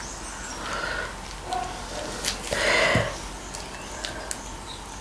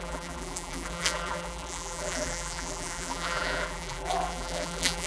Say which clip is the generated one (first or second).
second